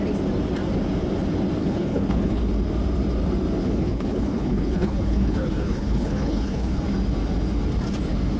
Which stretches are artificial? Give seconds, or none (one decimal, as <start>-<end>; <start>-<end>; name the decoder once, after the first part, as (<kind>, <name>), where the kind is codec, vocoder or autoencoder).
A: 1.6-2.4 (codec, HILCodec); 3.6-6.8